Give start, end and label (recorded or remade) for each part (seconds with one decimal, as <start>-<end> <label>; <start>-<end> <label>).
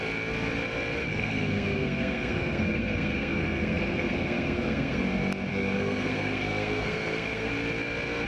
0.0-1.0 recorded; 1.0-5.0 remade; 5.0-5.5 recorded; 5.5-7.5 remade; 7.5-8.3 recorded